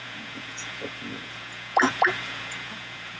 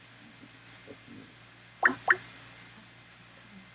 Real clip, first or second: second